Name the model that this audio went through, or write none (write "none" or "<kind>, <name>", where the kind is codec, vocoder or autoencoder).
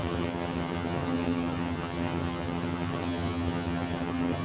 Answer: vocoder, HiFi-GAN